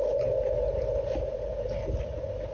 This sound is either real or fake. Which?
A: real